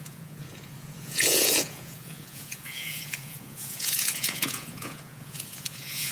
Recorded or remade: remade